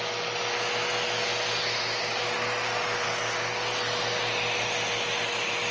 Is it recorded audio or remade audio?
recorded